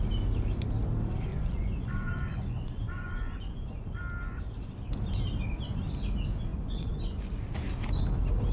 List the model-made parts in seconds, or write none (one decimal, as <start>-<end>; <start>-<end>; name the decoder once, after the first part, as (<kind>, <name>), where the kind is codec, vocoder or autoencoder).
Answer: 1.3-4.0 (vocoder, Vocos); 6.5-7.3